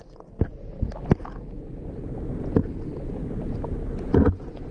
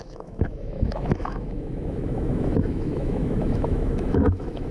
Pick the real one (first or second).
first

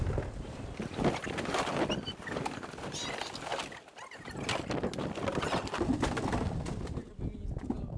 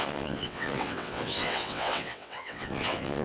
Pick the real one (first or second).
first